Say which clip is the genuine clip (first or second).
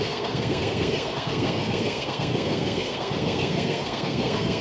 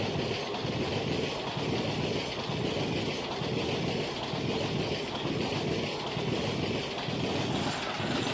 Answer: second